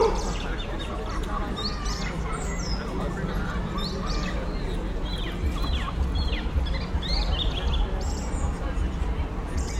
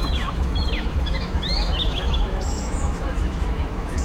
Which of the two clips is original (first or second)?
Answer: first